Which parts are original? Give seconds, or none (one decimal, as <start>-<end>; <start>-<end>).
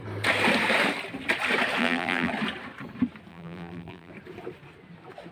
0.0-1.8; 2.3-3.3; 4.1-5.3